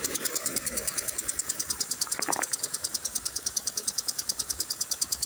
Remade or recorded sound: remade